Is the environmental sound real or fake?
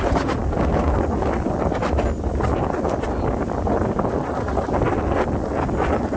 real